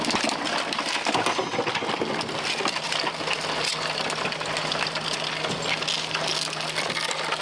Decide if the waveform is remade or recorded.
recorded